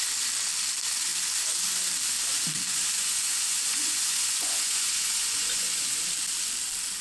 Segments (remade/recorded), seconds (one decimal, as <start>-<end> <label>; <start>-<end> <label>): 0.0-2.7 recorded; 2.7-6.0 remade; 6.0-7.0 recorded

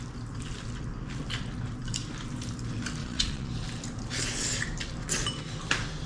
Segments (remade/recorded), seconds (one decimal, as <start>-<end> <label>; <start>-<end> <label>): 0.0-3.0 recorded; 3.0-3.5 remade; 3.5-6.1 recorded